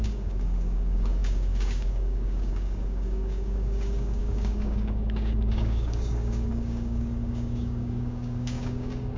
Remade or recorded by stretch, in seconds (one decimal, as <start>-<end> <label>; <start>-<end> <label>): 0.0-9.2 remade